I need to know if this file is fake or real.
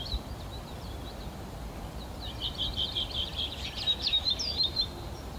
fake